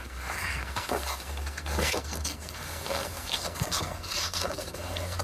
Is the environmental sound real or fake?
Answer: fake